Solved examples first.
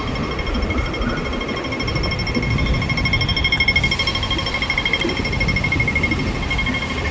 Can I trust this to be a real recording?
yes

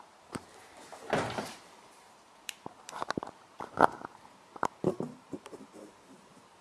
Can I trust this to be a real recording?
no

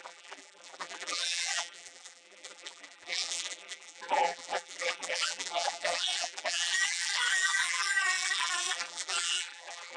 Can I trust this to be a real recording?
no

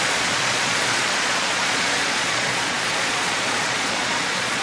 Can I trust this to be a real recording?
no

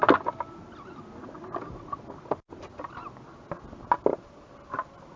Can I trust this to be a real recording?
yes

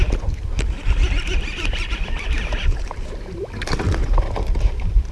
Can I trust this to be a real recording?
yes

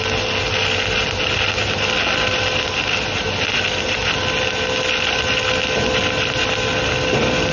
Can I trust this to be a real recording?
yes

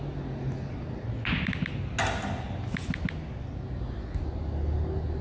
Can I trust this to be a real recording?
yes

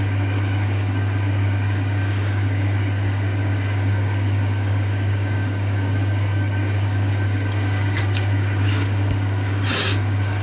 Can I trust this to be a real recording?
no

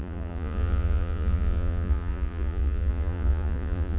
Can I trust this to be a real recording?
no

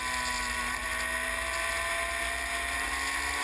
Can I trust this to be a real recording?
yes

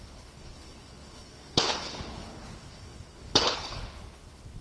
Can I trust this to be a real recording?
no